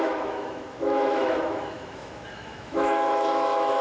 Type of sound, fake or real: fake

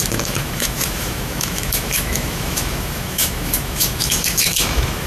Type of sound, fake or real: fake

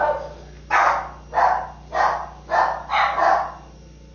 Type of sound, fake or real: real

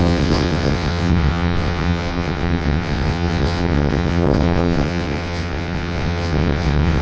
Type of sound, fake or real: fake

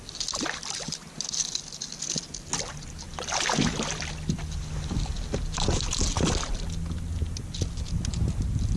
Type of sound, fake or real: real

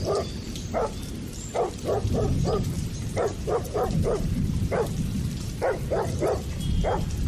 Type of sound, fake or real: fake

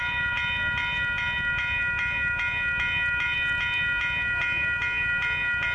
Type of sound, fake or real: real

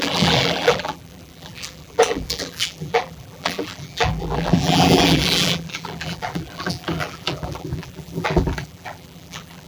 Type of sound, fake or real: fake